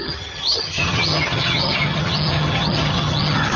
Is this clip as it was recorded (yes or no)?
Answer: no